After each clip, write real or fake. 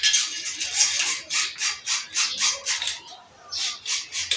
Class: real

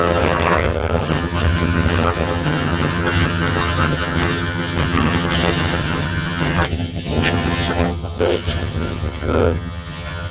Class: fake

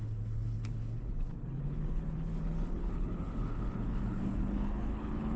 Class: fake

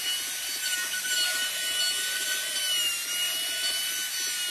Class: real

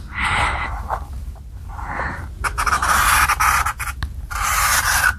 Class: real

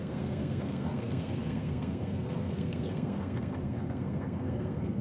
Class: fake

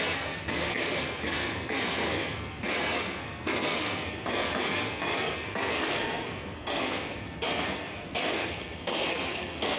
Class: fake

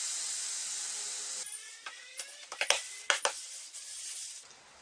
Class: real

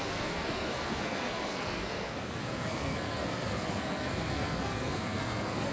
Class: fake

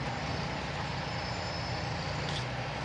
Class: real